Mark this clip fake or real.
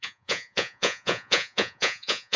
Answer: fake